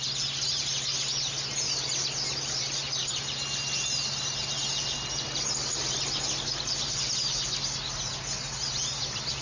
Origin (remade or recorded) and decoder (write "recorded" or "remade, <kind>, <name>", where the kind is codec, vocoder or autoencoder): recorded